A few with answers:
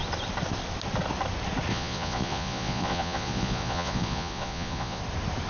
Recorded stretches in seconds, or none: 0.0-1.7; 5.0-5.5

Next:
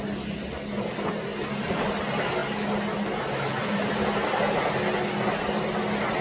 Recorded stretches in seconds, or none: 0.0-6.2